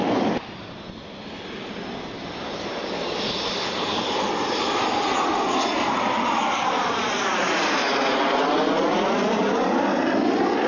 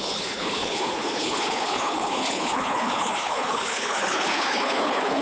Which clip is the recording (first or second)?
first